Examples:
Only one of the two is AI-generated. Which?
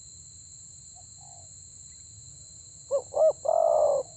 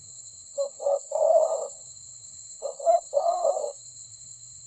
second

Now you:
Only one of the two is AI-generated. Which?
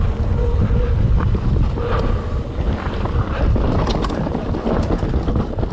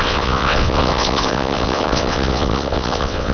second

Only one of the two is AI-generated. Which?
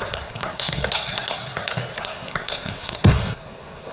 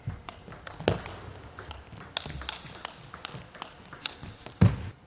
first